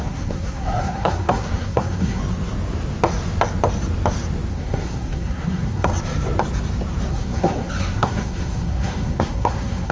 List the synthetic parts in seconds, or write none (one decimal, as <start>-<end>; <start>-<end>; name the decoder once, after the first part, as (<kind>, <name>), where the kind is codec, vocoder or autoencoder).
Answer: 0.0-2.2 (codec, SNAC); 4.5-5.9; 7.1-9.9